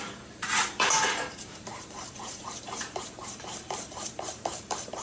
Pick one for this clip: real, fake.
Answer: fake